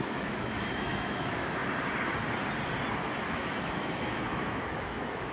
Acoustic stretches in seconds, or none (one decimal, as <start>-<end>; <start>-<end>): 1.6-3.0